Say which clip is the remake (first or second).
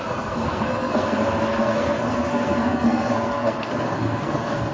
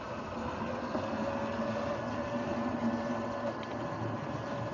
first